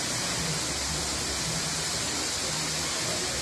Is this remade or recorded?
recorded